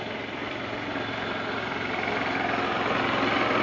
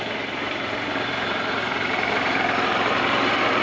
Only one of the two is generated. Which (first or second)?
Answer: second